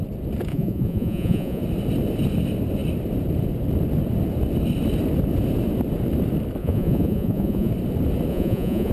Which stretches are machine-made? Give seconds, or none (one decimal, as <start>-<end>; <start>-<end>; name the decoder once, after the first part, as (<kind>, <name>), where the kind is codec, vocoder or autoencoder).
0.5-1.6 (vocoder, Vocos); 6.6-7.7; 8.3-8.9